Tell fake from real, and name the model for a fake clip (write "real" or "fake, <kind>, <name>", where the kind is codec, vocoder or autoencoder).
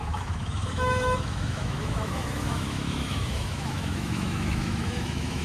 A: fake, autoencoder, DAC-VAE